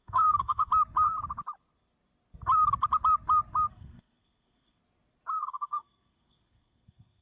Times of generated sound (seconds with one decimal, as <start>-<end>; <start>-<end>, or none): 0.0-0.7; 3.7-4.8; 5.4-7.2

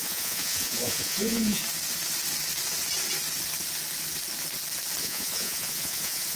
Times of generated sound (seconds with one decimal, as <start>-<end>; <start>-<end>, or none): 0.0-1.6; 5.0-6.4

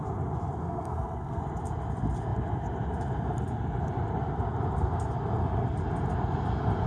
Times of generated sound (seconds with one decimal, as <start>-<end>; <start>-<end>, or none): 0.6-1.4

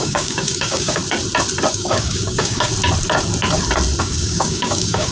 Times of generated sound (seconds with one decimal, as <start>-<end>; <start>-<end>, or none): 0.0-1.0; 1.7-2.7; 4.0-5.1

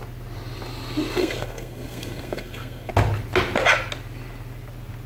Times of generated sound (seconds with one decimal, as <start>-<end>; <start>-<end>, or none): 1.2-2.9

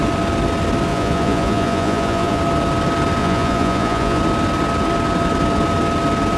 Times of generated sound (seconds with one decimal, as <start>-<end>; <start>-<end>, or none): 0.9-2.4; 3.2-4.2

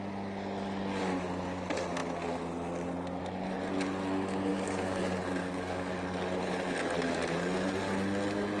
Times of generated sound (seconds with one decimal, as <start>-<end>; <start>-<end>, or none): 4.5-5.0; 5.4-5.9

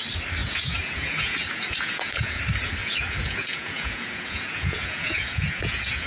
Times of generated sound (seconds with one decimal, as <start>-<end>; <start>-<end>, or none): 0.4-2.4; 2.8-6.1